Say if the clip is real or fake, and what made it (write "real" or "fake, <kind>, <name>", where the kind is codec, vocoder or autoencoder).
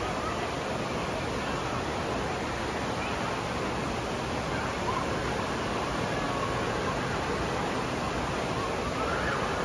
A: real